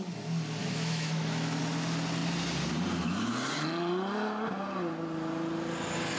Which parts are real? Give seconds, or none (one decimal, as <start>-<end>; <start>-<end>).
0.0-0.6; 1.6-6.2